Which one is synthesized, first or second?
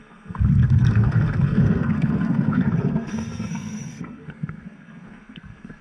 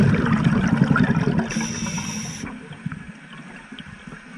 first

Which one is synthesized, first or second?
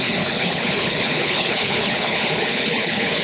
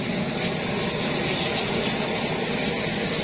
first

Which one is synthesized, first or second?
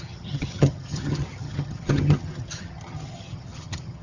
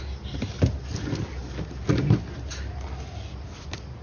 first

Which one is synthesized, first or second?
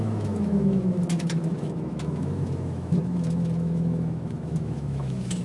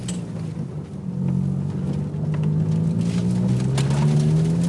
first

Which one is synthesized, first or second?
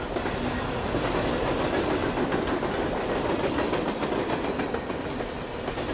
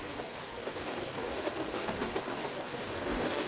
second